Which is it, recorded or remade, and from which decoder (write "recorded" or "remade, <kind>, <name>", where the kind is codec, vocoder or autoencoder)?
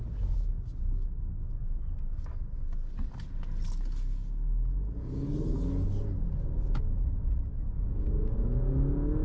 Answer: recorded